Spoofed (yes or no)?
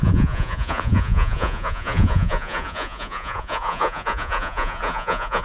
yes